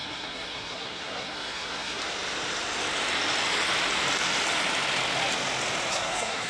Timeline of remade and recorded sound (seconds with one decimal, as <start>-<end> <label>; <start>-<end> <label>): 0.0-2.0 remade; 2.0-5.9 recorded; 5.9-6.5 remade